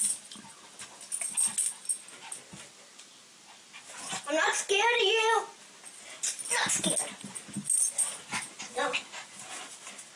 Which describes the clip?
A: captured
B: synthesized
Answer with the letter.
A